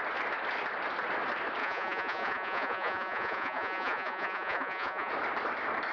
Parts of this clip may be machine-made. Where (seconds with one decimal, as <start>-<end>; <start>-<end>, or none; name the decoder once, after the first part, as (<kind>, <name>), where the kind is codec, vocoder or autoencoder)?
1.6-5.1 (vocoder, Vocos)